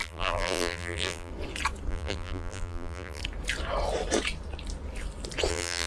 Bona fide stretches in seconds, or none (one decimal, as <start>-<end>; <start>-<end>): 1.3-1.9; 3.2-5.5